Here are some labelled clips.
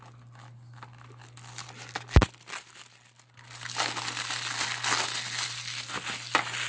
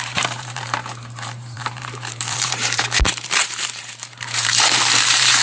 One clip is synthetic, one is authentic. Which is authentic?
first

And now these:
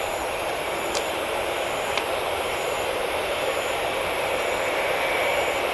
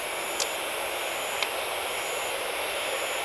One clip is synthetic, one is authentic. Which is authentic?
second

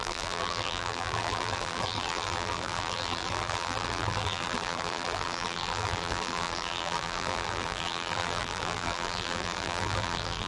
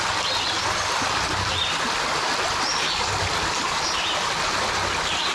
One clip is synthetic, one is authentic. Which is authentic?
second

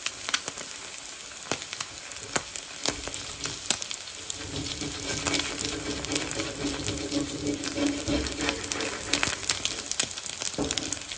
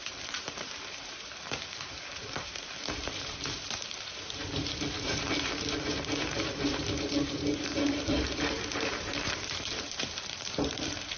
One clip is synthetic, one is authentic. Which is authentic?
first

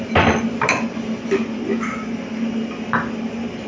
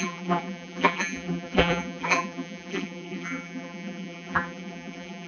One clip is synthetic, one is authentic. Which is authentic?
first